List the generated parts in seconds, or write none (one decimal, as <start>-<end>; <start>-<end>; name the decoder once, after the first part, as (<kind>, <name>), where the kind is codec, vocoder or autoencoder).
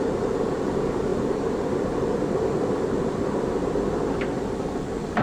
0.0-3.6 (vocoder, BigVGAN v2); 4.5-5.2